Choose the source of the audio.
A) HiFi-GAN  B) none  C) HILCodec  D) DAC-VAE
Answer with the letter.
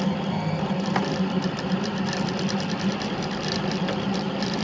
B